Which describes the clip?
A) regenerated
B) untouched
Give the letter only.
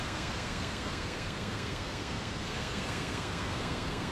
A